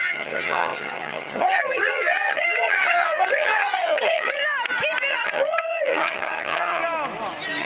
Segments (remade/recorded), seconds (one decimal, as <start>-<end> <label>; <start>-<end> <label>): 0.0-4.4 remade; 4.4-5.1 recorded; 5.1-6.8 remade; 6.8-7.6 recorded